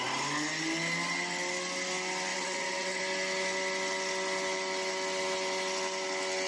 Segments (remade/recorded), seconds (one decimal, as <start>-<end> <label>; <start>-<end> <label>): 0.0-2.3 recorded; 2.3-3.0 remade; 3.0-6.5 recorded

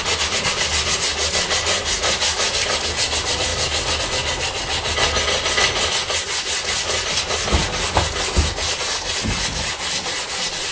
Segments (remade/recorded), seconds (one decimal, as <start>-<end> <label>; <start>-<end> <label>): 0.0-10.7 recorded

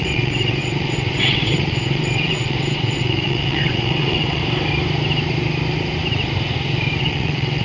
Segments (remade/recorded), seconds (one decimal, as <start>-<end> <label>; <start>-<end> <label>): 0.0-4.4 remade; 4.4-7.0 recorded; 7.0-7.6 remade

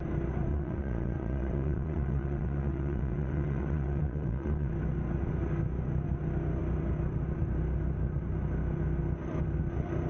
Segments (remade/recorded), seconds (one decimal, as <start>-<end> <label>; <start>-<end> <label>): 0.0-0.5 recorded; 0.5-4.7 remade; 4.7-10.1 recorded